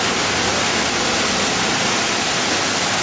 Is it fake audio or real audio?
real